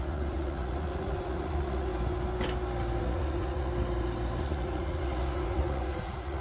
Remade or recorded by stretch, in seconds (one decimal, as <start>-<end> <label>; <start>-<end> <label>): 0.0-1.9 remade; 1.9-3.0 recorded; 3.0-3.7 remade; 3.7-4.4 recorded; 4.4-6.4 remade